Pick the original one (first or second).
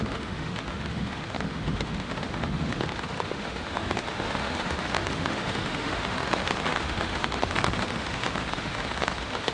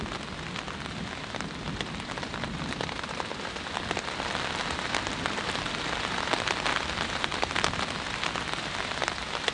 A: second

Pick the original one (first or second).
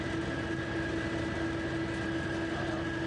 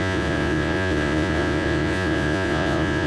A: first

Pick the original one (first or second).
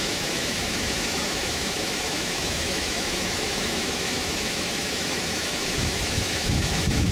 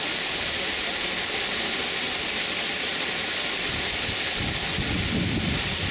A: second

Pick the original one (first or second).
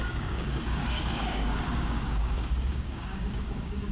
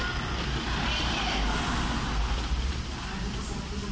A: second